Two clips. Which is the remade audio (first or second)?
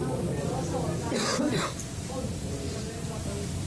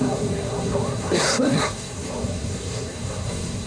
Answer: second